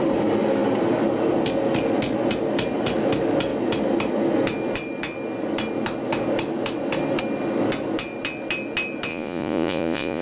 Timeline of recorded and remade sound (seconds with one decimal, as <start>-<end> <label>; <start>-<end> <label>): 0.0-9.1 recorded; 9.1-10.2 remade